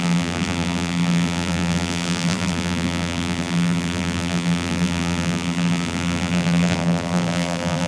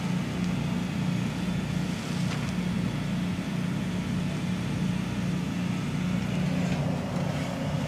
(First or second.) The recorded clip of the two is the second